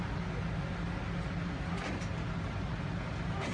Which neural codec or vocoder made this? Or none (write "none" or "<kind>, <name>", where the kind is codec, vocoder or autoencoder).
none